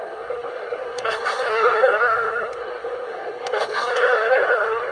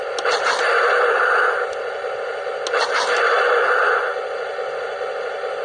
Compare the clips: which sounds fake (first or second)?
first